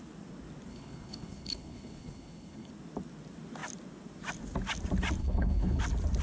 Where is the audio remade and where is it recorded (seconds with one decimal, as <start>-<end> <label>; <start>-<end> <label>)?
0.0-0.7 recorded; 0.7-2.7 remade; 2.7-5.2 recorded; 5.2-5.8 remade; 5.8-6.2 recorded